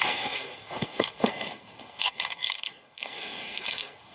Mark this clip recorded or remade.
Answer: remade